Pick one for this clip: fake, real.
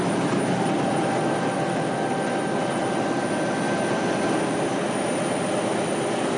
real